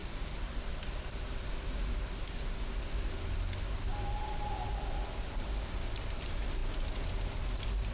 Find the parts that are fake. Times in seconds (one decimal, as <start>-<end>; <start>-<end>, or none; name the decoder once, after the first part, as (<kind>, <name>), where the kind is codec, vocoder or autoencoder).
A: none